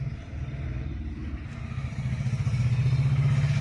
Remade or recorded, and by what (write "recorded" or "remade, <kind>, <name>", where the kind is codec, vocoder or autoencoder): recorded